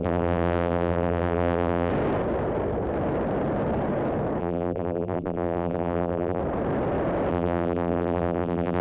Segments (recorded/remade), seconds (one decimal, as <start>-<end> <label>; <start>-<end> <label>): 0.0-1.9 remade; 1.9-4.4 recorded; 4.4-6.4 remade; 6.4-7.3 recorded; 7.3-8.8 remade